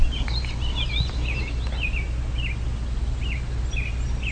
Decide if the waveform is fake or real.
real